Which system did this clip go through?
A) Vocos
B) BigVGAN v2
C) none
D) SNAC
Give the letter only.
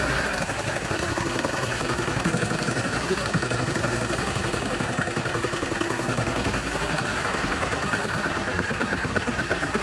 D